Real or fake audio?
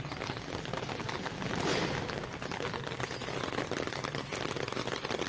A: fake